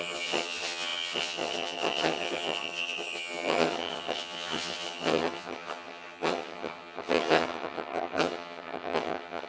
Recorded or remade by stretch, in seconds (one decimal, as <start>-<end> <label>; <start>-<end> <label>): 0.0-9.5 remade